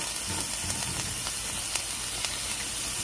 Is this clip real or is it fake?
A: real